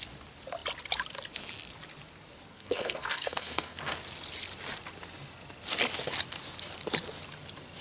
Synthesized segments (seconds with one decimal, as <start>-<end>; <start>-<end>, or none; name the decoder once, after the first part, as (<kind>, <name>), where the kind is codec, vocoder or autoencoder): 2.5-3.8 (codec, SNAC)